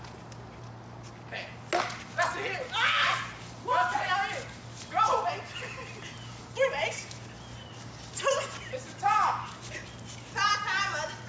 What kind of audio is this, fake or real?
real